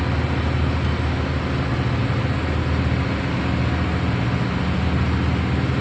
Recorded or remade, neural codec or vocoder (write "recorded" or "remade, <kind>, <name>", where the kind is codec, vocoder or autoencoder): recorded